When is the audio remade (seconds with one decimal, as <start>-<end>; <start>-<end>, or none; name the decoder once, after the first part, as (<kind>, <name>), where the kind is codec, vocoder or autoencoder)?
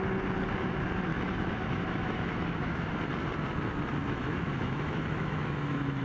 1.1-2.9 (autoencoder, DAC-VAE); 4.0-6.0